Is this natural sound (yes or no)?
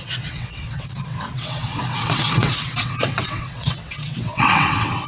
no